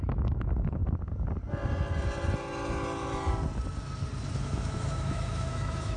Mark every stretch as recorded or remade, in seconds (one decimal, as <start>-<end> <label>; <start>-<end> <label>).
0.0-0.8 remade; 0.8-4.4 recorded; 4.4-6.0 remade